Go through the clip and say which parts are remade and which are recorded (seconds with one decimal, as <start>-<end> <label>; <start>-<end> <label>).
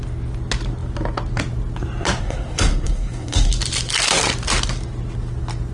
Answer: 0.0-2.2 recorded; 2.2-3.5 remade; 3.5-5.7 recorded